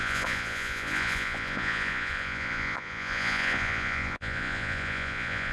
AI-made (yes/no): yes